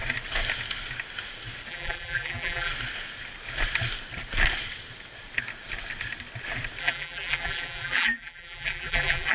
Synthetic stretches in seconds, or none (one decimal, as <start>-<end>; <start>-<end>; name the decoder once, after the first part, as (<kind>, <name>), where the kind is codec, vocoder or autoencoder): 1.7-2.7 (vocoder, BigVGAN v2); 6.8-9.3